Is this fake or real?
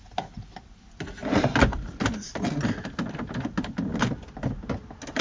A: real